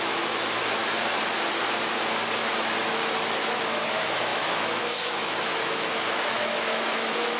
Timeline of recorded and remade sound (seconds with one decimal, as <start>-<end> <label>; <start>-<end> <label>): 0.0-0.8 remade; 0.8-2.8 recorded; 2.8-7.4 remade